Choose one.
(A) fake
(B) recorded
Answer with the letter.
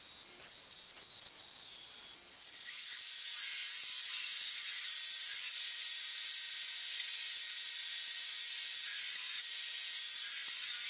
B